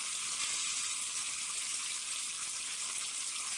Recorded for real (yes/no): yes